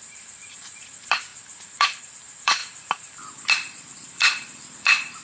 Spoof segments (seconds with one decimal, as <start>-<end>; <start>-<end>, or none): 0.0-2.6; 3.5-5.2

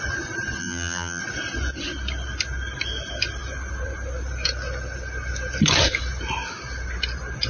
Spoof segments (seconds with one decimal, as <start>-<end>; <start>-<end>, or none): 0.6-1.2

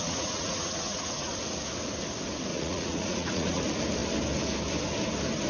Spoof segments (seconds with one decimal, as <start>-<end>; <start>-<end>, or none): 0.0-1.3; 2.5-3.6

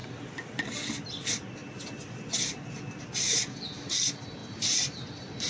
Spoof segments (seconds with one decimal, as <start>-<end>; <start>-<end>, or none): none

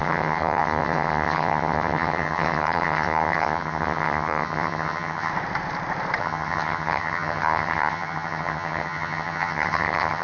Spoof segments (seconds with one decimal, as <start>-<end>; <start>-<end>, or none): 0.0-5.3; 6.2-10.2

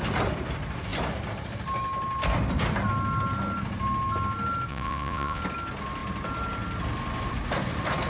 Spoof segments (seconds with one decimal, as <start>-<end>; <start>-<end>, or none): 4.7-5.4